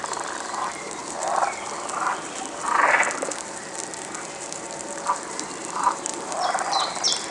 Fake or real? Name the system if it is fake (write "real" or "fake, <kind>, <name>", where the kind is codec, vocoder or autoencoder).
fake, vocoder, BigVGAN v2